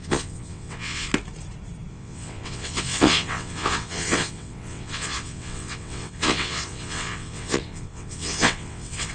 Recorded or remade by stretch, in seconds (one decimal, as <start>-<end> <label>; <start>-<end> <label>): 0.0-1.1 remade; 1.1-1.9 recorded; 1.9-9.1 remade